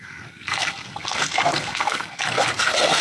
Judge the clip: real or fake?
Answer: fake